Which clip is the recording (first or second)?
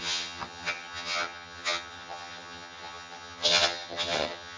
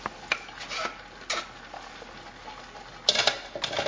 second